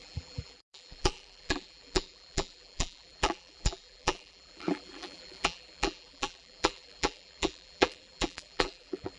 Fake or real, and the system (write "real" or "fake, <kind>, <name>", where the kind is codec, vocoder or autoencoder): fake, vocoder, BigVGAN v2